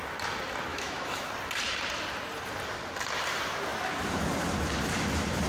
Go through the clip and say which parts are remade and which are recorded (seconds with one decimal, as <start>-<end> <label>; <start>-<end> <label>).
0.0-0.7 recorded; 0.7-1.3 remade; 1.3-5.5 recorded